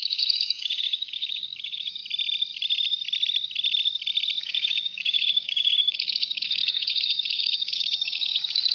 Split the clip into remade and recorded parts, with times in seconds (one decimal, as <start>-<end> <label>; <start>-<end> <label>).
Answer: 0.0-2.0 remade; 2.0-4.4 recorded; 4.4-8.7 remade